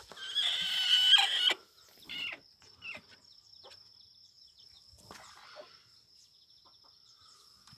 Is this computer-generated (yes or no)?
no